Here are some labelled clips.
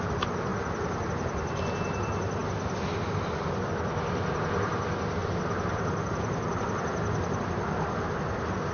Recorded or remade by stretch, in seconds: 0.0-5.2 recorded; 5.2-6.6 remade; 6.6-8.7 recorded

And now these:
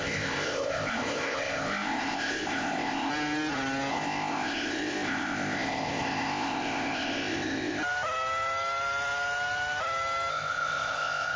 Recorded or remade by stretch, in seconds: 0.0-3.1 remade; 3.1-3.9 recorded; 3.9-7.8 remade; 7.8-10.3 recorded; 10.3-11.4 remade